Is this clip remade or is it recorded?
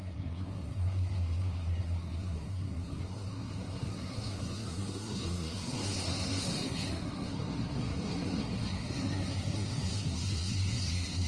remade